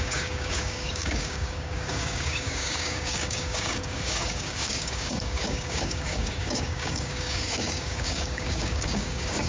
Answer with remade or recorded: remade